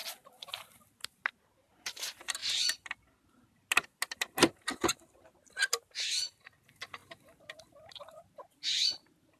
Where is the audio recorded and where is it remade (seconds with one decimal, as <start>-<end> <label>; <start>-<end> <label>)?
0.0-9.4 recorded